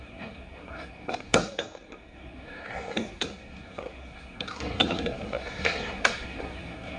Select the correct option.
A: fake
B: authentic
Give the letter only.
A